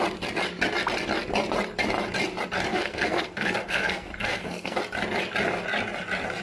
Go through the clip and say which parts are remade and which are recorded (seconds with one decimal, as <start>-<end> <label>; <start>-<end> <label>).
0.0-2.7 recorded; 2.7-4.8 remade; 4.8-6.4 recorded